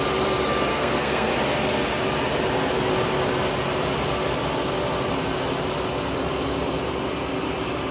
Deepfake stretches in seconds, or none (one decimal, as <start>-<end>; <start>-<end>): 0.7-1.3